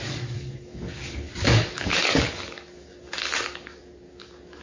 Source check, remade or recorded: remade